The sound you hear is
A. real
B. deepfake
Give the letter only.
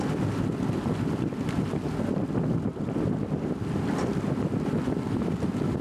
A